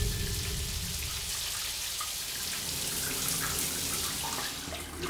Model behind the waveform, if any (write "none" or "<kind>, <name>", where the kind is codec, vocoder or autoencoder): none